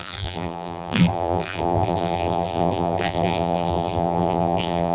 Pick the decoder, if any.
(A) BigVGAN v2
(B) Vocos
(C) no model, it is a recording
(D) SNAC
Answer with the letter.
A